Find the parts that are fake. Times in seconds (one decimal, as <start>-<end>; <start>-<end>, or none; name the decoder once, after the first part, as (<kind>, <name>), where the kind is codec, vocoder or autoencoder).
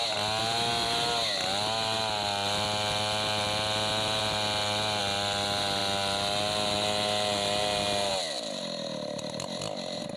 none